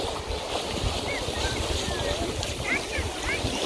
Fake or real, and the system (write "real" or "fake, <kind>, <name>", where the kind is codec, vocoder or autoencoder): real